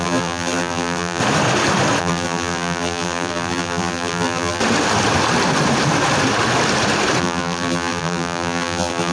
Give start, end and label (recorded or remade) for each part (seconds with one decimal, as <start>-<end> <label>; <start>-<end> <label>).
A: 0.0-1.2 remade; 1.2-2.0 recorded; 2.0-4.6 remade; 4.6-7.2 recorded; 7.2-9.1 remade